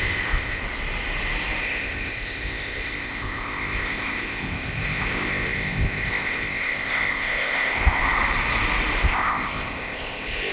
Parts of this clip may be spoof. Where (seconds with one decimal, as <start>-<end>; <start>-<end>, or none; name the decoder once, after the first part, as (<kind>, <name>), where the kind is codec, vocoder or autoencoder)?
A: 0.0-0.6 (codec, ZipCodec); 1.6-8.0; 9.0-10.5